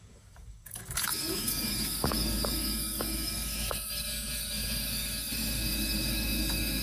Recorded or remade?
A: remade